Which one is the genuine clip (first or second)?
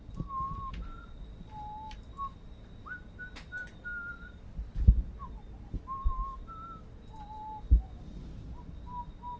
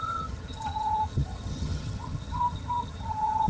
first